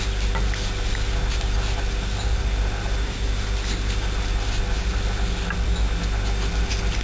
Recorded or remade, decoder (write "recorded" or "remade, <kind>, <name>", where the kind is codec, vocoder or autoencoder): recorded